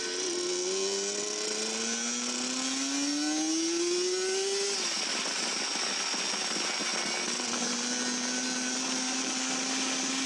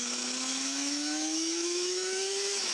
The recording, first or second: first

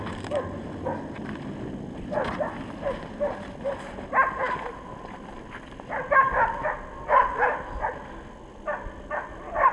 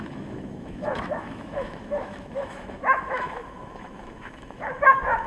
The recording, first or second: first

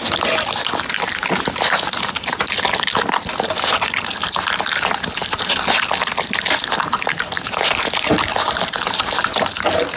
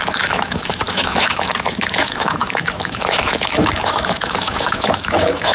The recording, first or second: first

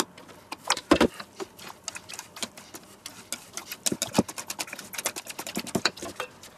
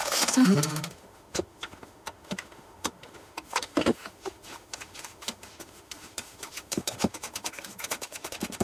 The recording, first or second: first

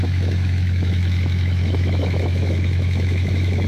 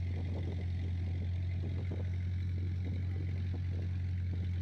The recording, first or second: second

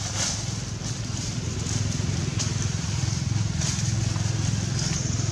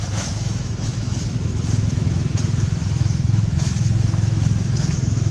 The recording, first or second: first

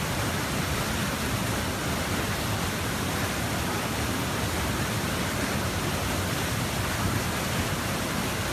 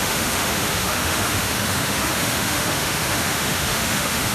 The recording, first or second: first